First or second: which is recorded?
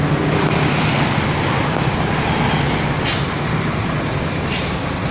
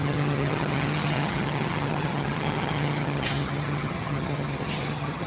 first